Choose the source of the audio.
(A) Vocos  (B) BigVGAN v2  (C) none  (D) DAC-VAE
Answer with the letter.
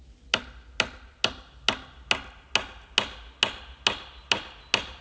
C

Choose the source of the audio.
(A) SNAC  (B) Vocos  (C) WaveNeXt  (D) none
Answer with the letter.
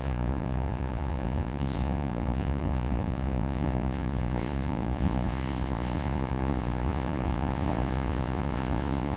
B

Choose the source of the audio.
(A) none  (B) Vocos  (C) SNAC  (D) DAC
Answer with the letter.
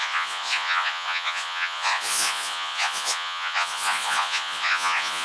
B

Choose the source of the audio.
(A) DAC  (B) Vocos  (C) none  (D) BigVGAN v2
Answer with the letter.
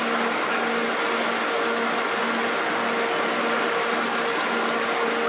C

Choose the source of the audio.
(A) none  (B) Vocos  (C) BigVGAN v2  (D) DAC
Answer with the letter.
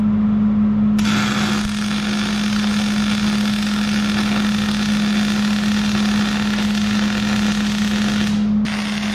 A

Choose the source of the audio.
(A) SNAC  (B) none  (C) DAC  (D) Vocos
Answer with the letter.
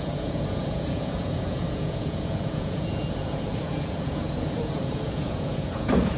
D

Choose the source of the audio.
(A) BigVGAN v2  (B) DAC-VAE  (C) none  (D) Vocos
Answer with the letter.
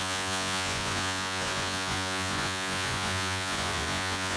D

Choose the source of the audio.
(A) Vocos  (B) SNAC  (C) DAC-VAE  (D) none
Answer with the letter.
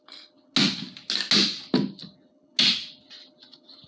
D